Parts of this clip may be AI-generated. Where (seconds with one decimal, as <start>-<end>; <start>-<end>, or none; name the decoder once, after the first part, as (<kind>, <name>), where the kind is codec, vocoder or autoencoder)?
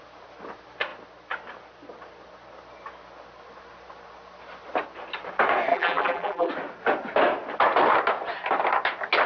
5.7-6.5 (vocoder, BigVGAN v2)